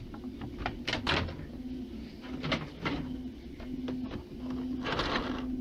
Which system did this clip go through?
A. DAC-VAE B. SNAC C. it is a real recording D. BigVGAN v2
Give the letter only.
C